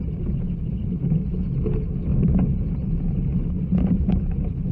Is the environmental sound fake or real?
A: real